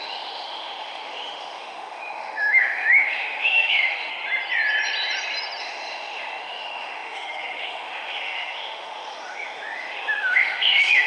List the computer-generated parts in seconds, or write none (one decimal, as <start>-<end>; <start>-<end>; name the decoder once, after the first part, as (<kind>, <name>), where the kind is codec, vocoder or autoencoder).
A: 0.0-4.1 (autoencoder, DAC-VAE); 5.6-11.1

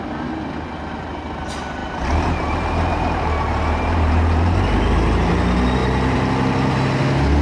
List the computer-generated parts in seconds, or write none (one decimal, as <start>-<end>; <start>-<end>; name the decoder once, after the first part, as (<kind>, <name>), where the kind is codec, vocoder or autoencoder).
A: 1.8-5.3 (vocoder, BigVGAN v2); 5.8-6.3

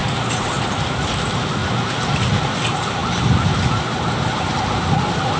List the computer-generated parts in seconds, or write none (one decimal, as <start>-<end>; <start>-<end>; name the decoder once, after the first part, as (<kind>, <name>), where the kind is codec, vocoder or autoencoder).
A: none

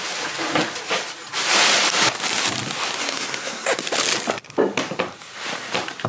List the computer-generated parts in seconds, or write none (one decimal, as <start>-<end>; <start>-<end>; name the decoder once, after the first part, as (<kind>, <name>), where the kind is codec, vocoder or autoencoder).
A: 3.0-3.7 (codec, SNAC)

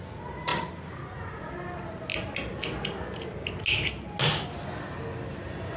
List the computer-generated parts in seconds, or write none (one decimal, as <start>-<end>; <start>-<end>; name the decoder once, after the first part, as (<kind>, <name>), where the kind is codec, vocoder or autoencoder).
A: none

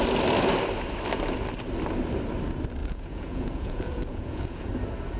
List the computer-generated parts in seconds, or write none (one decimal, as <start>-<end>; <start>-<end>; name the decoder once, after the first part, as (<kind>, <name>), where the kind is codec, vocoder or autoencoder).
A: 2.8-4.7 (vocoder, Vocos)

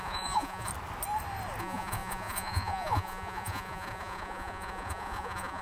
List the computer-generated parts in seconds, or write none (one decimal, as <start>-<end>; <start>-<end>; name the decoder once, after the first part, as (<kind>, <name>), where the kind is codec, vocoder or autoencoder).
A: 0.0-0.7 (vocoder, Vocos); 1.6-5.6